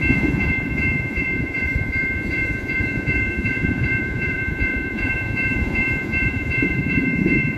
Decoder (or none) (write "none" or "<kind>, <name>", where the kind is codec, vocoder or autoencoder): vocoder, Vocos